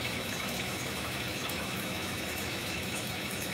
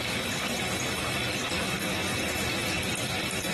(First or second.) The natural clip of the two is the second